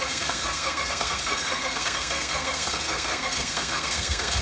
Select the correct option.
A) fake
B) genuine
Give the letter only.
A